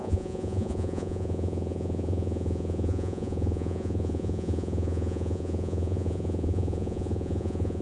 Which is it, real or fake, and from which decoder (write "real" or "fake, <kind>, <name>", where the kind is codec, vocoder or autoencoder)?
fake, vocoder, Vocos